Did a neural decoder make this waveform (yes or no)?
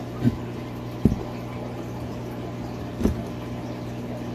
no